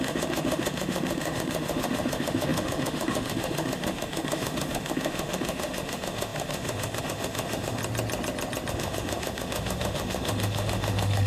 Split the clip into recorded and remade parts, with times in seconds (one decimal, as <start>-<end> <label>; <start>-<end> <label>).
0.0-7.8 remade; 7.8-8.7 recorded; 8.7-11.3 remade